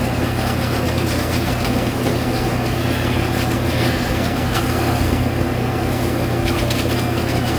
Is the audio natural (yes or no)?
no